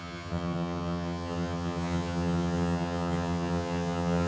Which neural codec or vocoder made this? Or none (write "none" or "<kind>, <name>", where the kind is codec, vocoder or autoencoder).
vocoder, HiFi-GAN